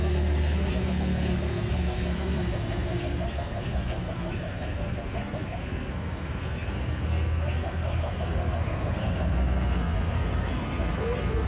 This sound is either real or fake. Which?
fake